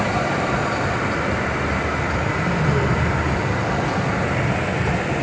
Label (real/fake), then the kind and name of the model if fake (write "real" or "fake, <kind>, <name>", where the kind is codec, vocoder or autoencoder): real